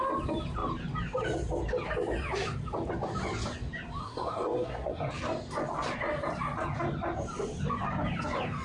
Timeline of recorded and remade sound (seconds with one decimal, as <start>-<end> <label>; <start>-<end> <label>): 0.0-4.0 recorded; 4.0-5.1 remade; 5.1-8.6 recorded